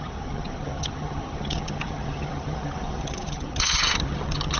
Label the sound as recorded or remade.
remade